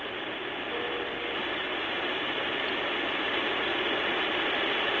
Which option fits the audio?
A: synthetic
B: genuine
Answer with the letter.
B